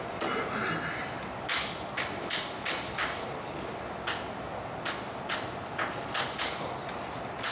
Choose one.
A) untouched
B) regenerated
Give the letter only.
A